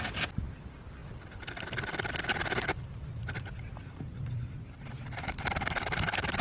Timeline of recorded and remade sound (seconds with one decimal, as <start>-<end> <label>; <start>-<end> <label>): 0.0-2.3 recorded; 2.3-6.4 remade